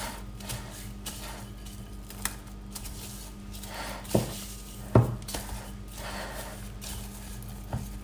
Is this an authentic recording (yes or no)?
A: yes